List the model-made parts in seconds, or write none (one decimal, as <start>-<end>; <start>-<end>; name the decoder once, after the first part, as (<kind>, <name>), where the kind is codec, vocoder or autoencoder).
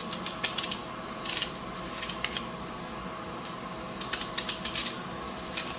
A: none